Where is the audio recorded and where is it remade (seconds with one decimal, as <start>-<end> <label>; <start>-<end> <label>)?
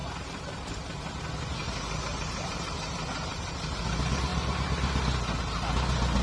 0.0-1.0 remade; 1.0-1.6 recorded; 1.6-3.8 remade; 3.8-6.2 recorded